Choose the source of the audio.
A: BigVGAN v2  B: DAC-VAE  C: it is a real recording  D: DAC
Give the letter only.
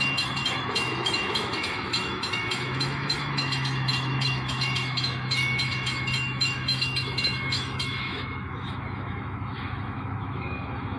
B